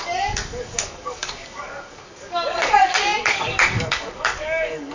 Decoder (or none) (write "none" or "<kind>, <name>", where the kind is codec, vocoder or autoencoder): codec, DAC